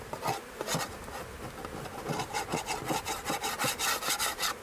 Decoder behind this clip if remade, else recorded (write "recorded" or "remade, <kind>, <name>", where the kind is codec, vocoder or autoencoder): recorded